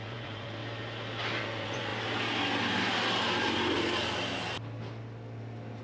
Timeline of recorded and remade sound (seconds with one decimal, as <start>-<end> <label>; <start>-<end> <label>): 0.0-0.6 remade; 0.6-1.4 recorded; 1.4-1.9 remade; 1.9-5.8 recorded